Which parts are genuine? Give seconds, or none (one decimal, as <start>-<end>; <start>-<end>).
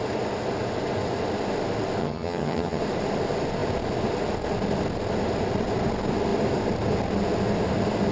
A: 0.0-2.0; 2.8-8.1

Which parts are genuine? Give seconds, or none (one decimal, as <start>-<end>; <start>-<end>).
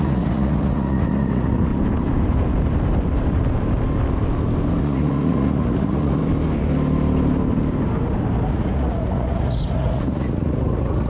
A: 1.7-4.8; 6.2-8.5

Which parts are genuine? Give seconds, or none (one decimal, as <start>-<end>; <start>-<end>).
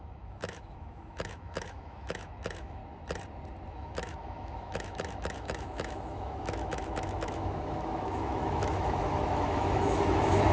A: 2.8-3.7